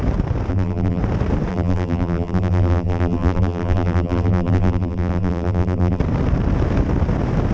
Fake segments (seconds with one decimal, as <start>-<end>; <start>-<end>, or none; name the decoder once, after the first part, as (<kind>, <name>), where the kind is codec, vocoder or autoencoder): 0.5-1.0 (vocoder, BigVGAN v2); 1.5-6.0